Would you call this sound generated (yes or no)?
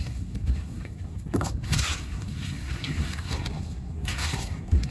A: yes